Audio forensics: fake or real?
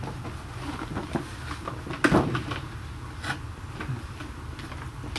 real